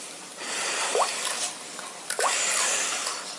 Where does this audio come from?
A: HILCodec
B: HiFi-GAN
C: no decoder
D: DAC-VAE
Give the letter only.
C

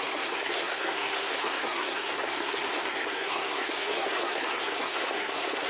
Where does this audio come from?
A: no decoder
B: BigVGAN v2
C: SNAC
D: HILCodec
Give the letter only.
C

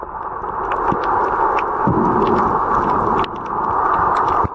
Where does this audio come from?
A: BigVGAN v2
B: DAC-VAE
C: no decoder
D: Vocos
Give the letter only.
C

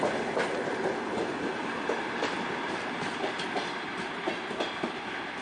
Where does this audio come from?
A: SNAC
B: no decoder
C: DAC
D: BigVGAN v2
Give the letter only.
B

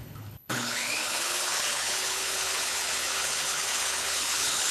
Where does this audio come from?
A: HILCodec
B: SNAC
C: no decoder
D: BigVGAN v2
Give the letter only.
A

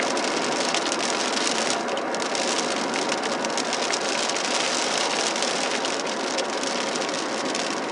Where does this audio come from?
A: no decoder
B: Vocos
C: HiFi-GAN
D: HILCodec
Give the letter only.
A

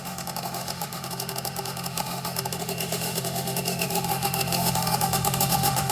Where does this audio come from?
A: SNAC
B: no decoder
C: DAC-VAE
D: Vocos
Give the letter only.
C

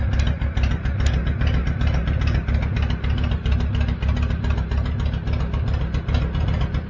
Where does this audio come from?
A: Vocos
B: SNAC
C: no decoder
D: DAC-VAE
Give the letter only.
C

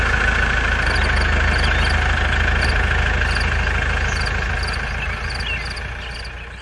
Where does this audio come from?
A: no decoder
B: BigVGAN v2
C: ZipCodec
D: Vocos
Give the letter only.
A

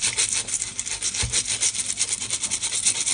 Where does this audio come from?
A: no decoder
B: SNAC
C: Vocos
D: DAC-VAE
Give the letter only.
A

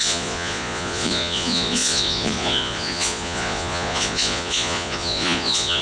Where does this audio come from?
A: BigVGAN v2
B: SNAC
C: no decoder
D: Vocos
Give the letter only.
D